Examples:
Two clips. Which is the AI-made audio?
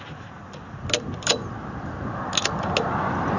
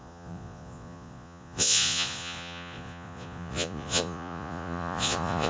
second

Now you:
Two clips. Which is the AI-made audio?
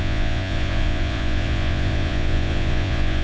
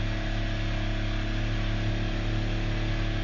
first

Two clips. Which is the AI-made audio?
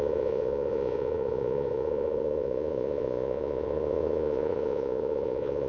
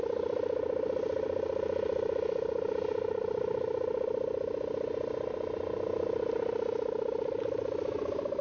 first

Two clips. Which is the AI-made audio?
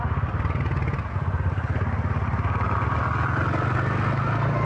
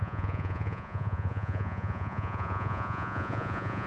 second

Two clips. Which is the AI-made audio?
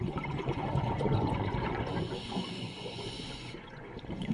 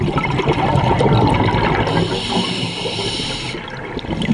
first